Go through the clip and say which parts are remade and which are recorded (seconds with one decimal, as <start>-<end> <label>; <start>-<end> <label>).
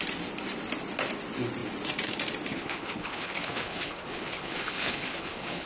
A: 0.0-2.5 recorded; 2.5-5.7 remade